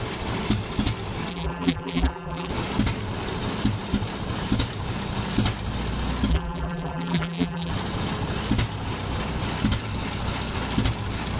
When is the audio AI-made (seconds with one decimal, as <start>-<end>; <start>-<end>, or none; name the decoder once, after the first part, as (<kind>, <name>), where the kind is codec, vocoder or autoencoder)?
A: 1.3-2.5 (vocoder, BigVGAN v2); 6.3-7.7

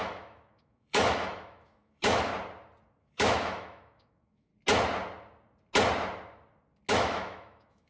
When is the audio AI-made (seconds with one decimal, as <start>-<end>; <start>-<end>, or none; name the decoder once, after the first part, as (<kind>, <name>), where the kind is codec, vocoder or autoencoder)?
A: 0.0-2.3 (autoencoder, DAC-VAE); 3.0-4.5; 6.9-7.9